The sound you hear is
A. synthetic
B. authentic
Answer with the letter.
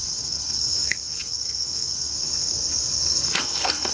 A